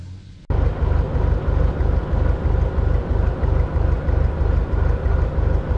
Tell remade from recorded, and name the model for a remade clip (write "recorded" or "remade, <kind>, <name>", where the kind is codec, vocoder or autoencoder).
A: recorded